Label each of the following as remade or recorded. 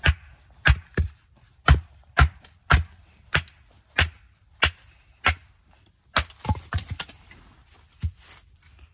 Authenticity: recorded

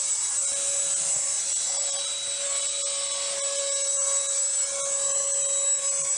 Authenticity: recorded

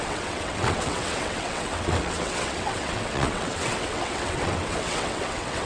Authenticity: remade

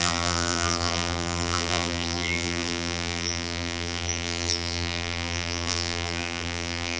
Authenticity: remade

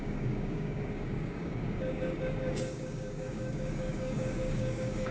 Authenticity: remade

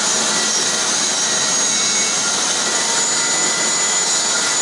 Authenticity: recorded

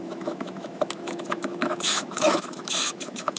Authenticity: remade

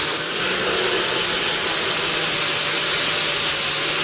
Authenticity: recorded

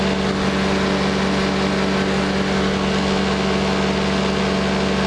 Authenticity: recorded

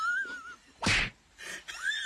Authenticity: recorded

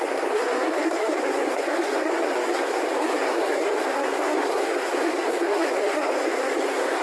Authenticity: remade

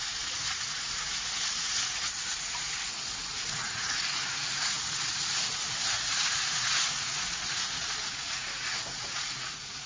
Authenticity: remade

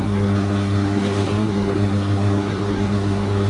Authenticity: remade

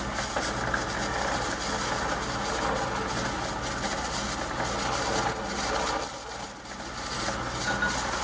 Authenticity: recorded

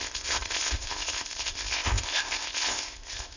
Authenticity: remade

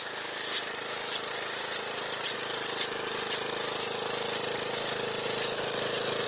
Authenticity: recorded